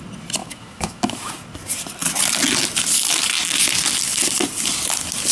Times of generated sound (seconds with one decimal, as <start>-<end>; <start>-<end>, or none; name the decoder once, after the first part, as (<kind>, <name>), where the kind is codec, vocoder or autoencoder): 0.4-1.3 (autoencoder, DAC-VAE)